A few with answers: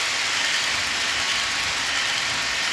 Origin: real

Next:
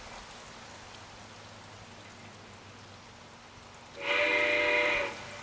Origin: real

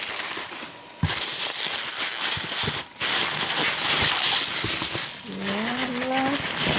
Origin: real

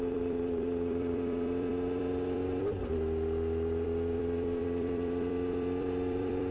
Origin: fake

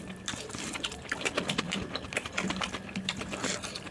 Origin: fake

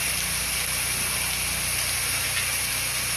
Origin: real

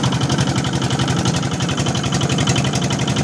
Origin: fake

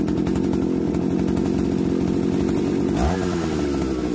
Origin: real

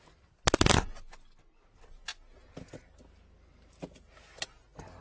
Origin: real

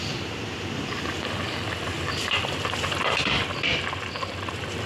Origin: fake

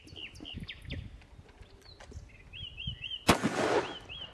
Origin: real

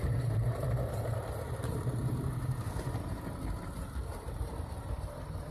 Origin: fake